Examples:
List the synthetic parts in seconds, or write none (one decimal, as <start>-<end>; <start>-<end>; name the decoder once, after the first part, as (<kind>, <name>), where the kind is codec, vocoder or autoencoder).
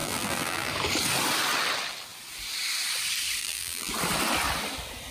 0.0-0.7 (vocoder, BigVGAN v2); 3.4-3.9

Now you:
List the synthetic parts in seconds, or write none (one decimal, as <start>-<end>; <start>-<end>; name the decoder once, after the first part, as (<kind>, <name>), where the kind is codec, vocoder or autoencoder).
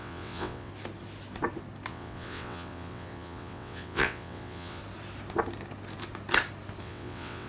0.0-0.7 (vocoder, WaveNeXt); 1.9-4.8; 6.8-7.5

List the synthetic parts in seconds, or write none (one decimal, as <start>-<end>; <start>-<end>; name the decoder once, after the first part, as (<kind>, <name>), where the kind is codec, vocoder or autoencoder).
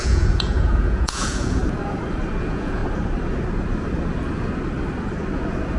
0.0-1.6 (vocoder, Vocos); 2.4-2.8